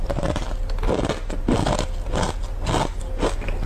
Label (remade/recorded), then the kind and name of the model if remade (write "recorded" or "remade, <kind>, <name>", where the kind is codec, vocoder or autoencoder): recorded